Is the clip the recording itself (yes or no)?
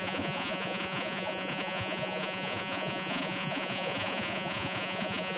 no